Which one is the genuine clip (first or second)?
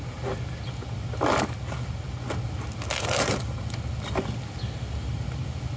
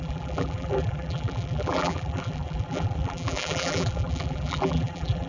first